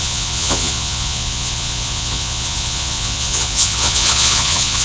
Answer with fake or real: fake